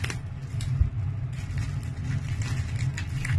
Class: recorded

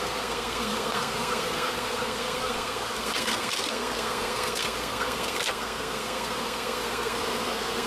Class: remade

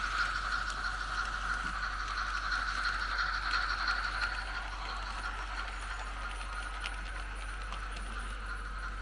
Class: recorded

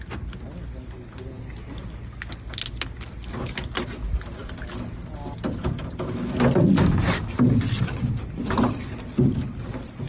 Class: recorded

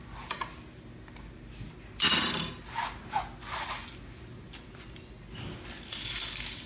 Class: recorded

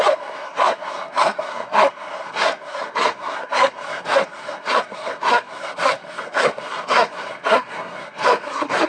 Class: remade